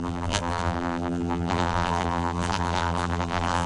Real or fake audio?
fake